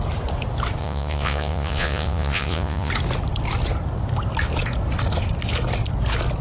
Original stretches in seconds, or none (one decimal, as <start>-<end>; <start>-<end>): 0.0-0.8; 2.9-6.4